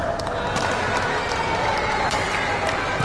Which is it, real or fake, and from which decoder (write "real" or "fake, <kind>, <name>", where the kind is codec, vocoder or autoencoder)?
real